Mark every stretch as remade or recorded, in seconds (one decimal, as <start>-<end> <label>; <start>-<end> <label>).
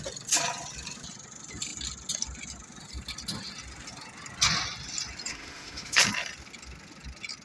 0.0-5.3 recorded; 5.3-6.0 remade; 6.0-7.4 recorded